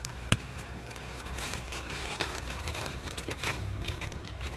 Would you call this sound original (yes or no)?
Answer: no